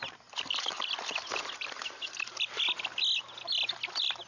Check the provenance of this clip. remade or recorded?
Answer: recorded